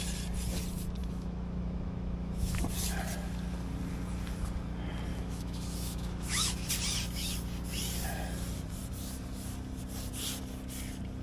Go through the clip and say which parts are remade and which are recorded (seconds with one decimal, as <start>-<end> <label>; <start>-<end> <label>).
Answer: 0.0-1.0 recorded; 1.0-2.6 remade; 2.6-5.1 recorded; 5.1-6.7 remade; 6.7-11.2 recorded